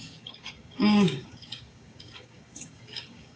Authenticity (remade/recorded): remade